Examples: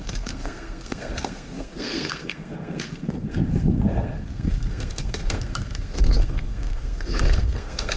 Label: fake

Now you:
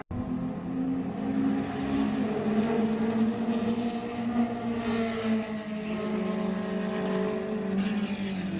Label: real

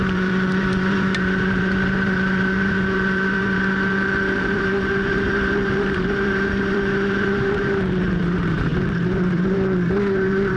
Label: fake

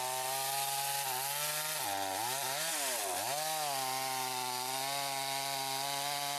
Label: real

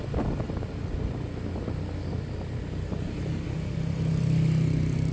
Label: real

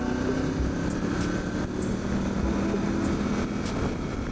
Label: real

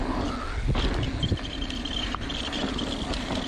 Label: real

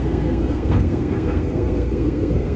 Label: fake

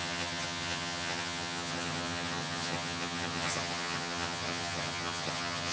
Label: fake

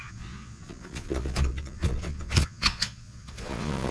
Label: fake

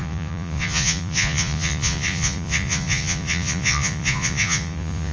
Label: fake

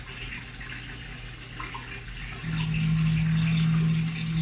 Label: real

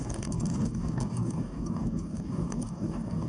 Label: fake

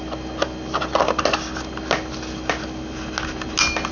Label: real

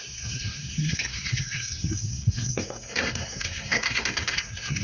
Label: fake